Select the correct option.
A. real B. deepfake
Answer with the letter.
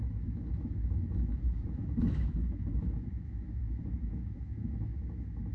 B